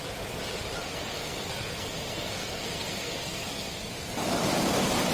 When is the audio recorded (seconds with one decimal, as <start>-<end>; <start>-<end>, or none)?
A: 0.0-0.8; 3.9-5.1